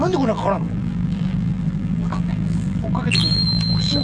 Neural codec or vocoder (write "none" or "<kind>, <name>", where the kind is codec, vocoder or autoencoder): vocoder, BigVGAN v2